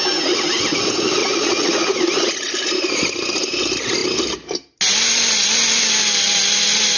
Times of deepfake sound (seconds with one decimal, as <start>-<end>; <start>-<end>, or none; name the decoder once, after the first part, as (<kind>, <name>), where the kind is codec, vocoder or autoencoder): 1.2-2.3 (vocoder, Vocos)